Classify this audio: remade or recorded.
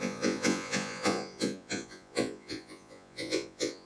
remade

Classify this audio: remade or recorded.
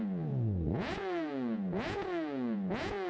remade